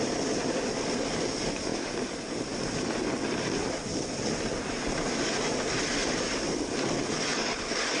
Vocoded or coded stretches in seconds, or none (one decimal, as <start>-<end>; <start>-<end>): 1.7-4.4; 6.0-6.8; 7.3-8.0